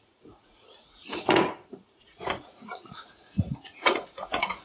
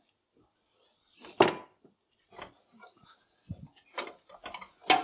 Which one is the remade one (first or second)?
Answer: first